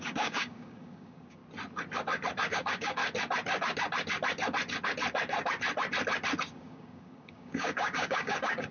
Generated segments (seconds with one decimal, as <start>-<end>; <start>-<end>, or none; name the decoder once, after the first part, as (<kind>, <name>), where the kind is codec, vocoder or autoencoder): 0.0-1.4 (codec, DAC); 2.5-3.0; 6.5-8.7